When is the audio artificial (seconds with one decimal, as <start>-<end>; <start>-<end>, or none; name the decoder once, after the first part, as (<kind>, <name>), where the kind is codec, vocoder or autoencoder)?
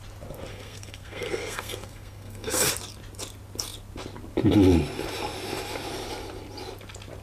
0.5-2.7 (codec, SNAC)